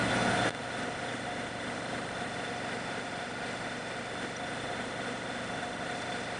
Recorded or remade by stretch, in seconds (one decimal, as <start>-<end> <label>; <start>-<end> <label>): 0.0-6.4 recorded